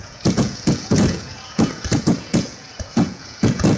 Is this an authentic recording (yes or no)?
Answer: no